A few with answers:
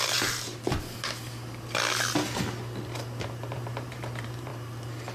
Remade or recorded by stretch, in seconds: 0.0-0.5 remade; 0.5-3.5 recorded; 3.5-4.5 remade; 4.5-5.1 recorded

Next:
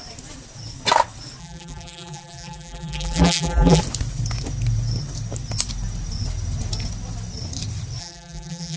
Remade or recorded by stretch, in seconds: 0.0-1.4 recorded; 1.4-3.8 remade; 3.8-8.0 recorded; 8.0-8.8 remade

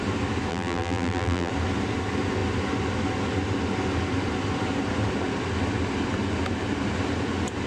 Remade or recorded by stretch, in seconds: 0.0-0.5 recorded; 0.5-1.5 remade; 1.5-7.7 recorded

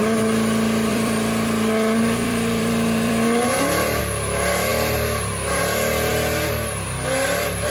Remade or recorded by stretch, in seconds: 0.0-0.9 recorded; 0.9-4.0 remade; 4.0-7.7 recorded

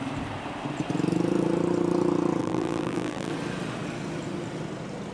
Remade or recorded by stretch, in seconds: 0.0-2.4 recorded; 2.4-3.3 remade; 3.3-5.1 recorded

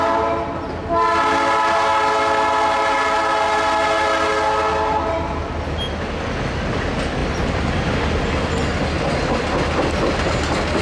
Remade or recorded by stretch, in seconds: 0.0-7.2 recorded; 7.2-8.0 remade; 8.0-10.8 recorded

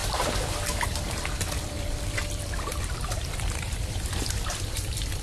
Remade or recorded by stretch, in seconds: 0.0-0.9 recorded; 0.9-5.2 remade